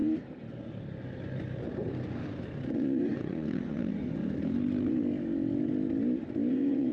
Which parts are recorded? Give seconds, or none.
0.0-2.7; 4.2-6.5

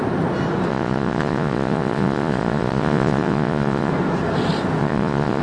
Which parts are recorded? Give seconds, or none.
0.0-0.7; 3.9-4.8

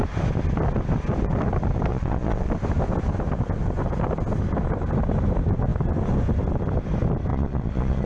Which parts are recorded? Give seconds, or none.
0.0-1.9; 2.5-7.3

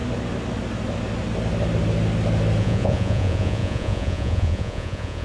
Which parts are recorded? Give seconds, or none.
0.0-2.6

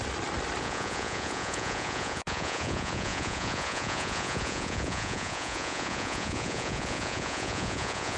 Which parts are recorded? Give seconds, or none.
0.0-0.6